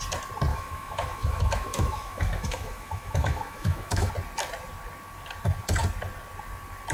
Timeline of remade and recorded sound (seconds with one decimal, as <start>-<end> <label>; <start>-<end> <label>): 0.0-0.5 recorded; 0.5-4.1 remade; 4.1-6.9 recorded